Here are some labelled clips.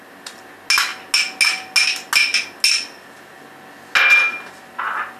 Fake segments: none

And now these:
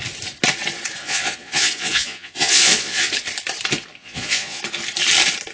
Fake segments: 1.0-3.1 (vocoder, Vocos); 4.0-4.6